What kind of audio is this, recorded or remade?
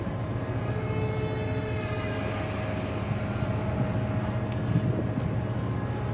recorded